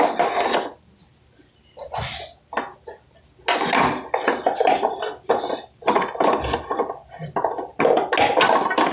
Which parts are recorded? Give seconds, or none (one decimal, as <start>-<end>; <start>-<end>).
0.0-8.9